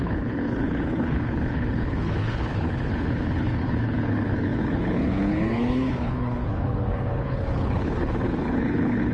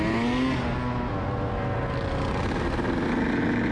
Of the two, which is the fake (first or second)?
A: first